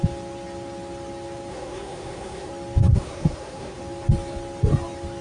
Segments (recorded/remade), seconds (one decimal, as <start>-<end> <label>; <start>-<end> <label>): 0.0-1.5 recorded; 1.5-2.5 remade; 2.5-2.9 recorded; 2.9-3.8 remade; 3.8-5.2 recorded